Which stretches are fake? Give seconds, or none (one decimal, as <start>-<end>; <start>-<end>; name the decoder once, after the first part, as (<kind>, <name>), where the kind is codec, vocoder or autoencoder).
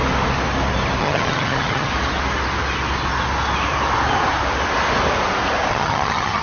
1.0-1.9 (vocoder, HiFi-GAN); 5.7-6.4